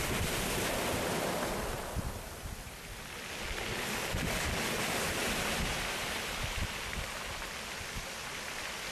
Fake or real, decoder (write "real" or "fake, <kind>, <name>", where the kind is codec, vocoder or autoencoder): real